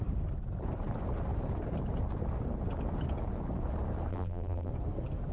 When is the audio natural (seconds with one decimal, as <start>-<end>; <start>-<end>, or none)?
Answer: 0.0-4.1; 4.7-5.3